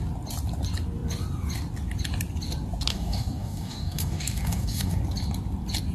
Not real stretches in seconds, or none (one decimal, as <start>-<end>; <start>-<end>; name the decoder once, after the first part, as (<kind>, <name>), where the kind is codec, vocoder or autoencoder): 2.9-5.0 (codec, DAC)